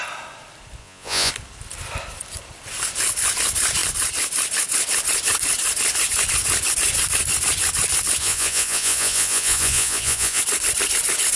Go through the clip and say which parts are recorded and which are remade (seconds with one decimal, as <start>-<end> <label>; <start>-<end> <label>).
0.0-0.8 recorded; 0.8-1.3 remade; 1.3-8.2 recorded; 8.2-10.4 remade; 10.4-11.4 recorded